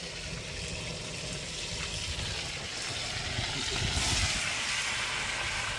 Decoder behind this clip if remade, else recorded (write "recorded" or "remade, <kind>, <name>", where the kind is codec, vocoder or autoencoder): recorded